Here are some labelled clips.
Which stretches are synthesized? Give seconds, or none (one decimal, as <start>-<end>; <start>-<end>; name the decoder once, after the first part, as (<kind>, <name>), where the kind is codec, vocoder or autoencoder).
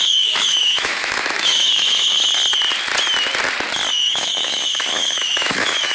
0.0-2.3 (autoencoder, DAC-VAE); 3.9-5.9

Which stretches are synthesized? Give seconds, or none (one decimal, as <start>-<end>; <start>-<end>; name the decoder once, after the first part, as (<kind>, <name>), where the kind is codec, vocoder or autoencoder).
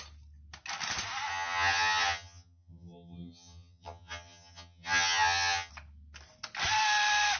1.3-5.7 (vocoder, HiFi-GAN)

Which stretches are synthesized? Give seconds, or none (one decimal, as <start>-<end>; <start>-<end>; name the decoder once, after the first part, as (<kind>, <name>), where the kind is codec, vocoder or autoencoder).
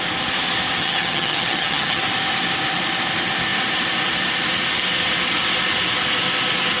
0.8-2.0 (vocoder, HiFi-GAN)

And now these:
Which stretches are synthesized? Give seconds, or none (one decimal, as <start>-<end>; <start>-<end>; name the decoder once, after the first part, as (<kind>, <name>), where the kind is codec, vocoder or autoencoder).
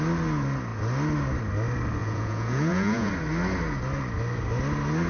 2.0-3.1 (vocoder, Vocos)